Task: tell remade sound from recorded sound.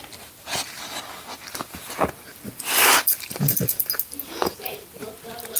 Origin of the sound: recorded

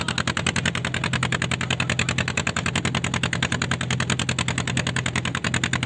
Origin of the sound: recorded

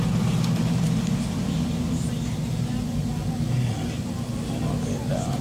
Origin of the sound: recorded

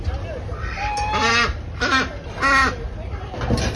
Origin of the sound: recorded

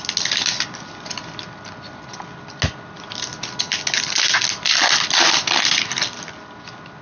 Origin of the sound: recorded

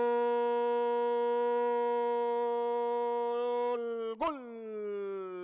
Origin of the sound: recorded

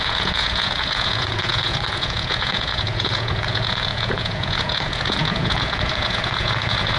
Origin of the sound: remade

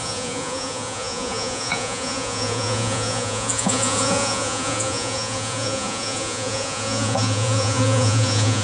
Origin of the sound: remade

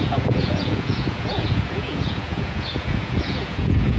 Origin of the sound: remade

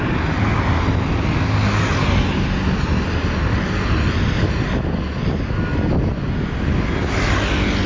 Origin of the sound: recorded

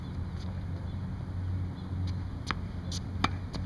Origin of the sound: recorded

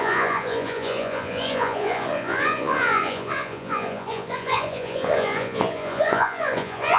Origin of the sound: remade